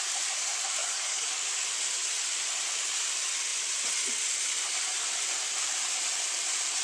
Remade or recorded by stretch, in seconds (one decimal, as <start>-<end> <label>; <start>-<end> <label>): 0.0-0.8 recorded; 0.8-1.4 remade; 1.4-6.8 recorded